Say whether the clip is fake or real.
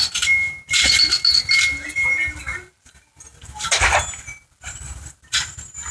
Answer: real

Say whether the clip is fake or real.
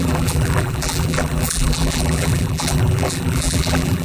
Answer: fake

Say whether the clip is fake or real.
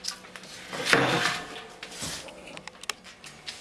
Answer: real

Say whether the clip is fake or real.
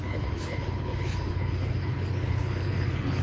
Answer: fake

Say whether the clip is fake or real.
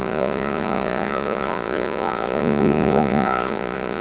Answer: fake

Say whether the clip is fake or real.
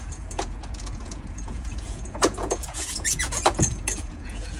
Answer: fake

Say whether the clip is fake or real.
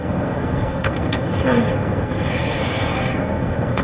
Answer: fake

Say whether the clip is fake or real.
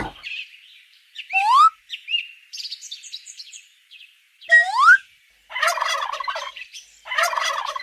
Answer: fake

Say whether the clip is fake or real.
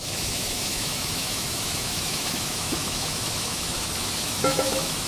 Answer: fake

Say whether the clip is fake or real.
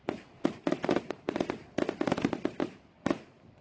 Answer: real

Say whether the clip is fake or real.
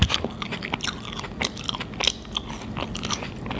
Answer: real